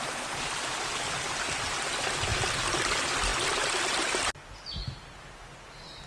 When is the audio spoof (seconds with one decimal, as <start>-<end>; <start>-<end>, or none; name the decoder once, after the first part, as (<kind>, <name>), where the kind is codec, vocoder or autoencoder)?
none